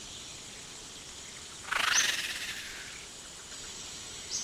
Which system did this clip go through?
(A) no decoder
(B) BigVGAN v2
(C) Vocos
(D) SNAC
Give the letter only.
A